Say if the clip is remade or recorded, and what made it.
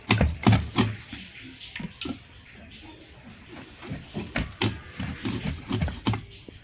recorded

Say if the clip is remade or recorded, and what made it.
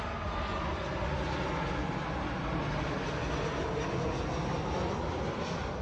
recorded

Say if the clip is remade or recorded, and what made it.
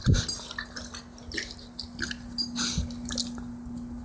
recorded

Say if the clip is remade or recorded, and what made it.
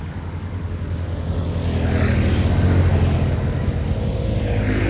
remade, codec, DAC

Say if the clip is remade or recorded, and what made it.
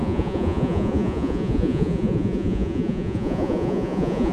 remade, vocoder, Vocos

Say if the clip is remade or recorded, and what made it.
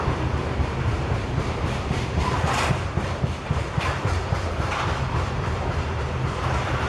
remade, vocoder, BigVGAN v2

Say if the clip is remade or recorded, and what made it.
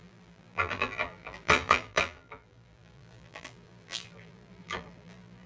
remade, vocoder, BigVGAN v2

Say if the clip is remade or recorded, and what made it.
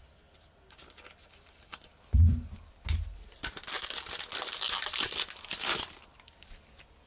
recorded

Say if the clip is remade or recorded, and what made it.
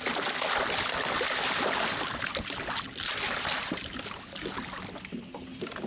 recorded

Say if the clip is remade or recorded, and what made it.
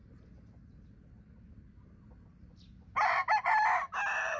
recorded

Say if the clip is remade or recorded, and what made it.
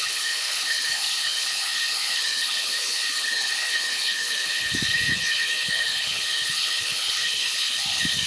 remade, codec, HILCodec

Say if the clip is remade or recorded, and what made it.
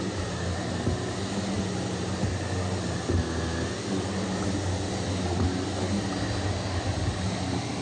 recorded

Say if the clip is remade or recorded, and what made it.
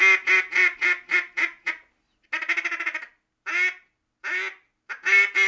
recorded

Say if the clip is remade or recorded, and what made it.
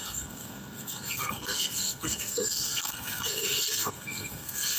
remade, codec, SNAC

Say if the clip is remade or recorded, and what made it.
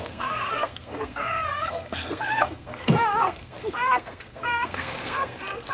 remade, codec, SNAC